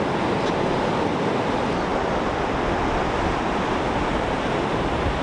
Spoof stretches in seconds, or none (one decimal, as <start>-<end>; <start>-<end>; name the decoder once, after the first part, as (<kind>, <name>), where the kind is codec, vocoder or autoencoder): none